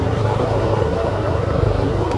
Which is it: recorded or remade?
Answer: remade